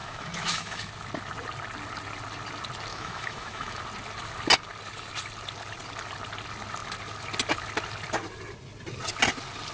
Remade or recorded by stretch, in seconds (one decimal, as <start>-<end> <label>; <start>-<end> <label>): 0.0-0.9 remade; 0.9-2.9 recorded; 2.9-3.8 remade; 3.8-9.7 recorded